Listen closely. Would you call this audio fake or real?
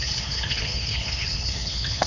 fake